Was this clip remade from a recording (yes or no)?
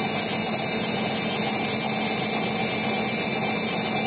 no